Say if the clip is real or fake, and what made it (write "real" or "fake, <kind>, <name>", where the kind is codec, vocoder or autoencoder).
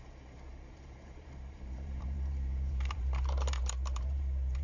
fake, vocoder, BigVGAN v2